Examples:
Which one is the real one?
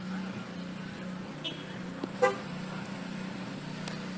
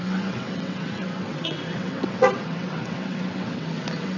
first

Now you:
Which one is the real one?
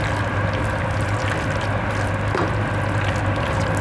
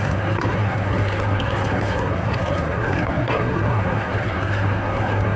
first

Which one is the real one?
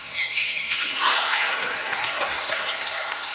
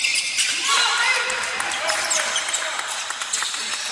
second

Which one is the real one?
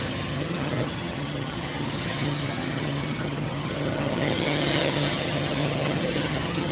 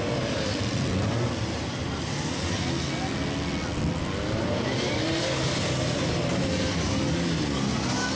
second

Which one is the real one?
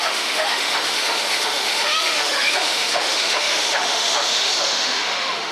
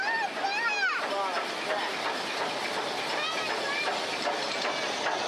second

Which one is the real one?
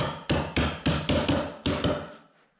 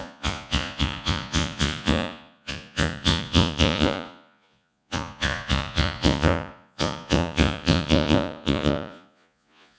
first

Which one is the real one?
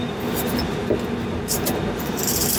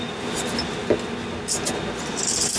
second